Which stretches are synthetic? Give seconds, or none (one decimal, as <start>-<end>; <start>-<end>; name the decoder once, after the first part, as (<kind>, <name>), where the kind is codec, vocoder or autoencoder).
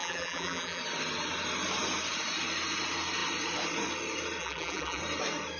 0.0-0.8 (vocoder, BigVGAN v2); 4.4-5.0